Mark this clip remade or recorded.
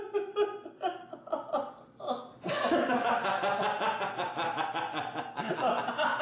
recorded